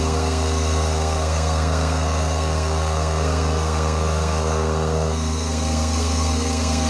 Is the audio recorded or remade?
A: remade